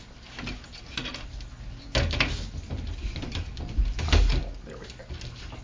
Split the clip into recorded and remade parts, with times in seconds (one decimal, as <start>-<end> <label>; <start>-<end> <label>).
0.0-5.6 recorded